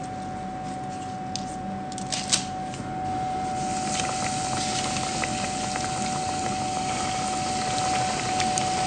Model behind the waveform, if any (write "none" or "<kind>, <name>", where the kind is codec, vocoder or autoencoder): none